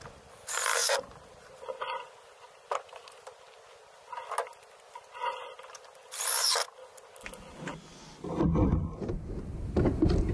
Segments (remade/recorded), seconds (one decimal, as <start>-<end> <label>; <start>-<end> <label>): 0.0-10.3 recorded